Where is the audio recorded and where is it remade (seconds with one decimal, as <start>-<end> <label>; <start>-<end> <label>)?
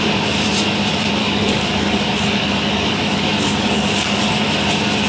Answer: 0.0-1.2 recorded; 1.2-4.3 remade; 4.3-5.1 recorded